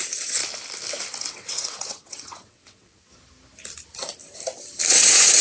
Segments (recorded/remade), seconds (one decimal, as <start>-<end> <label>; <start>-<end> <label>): 0.0-0.4 remade; 0.4-1.3 recorded; 1.3-3.1 remade; 3.1-4.9 recorded; 4.9-5.4 remade